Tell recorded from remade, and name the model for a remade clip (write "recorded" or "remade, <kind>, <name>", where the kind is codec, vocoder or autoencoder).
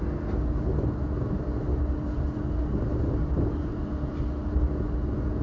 recorded